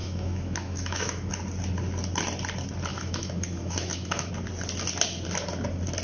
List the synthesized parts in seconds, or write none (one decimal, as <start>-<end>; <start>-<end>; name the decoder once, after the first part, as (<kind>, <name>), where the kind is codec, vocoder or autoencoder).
0.0-1.3 (autoencoder, DAC-VAE); 2.9-4.3